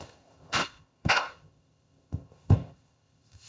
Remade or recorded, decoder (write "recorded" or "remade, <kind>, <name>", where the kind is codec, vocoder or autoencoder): remade, codec, ZipCodec